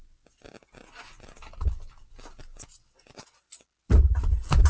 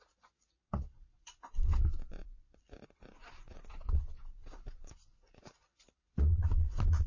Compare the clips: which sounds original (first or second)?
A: first